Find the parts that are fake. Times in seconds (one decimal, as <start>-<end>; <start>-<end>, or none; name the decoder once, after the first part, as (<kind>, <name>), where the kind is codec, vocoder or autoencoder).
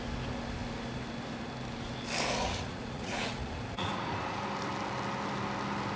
2.4-4.4 (vocoder, Vocos)